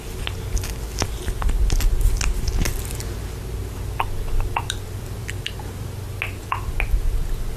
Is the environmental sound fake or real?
real